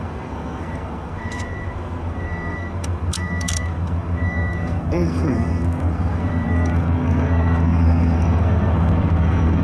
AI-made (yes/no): yes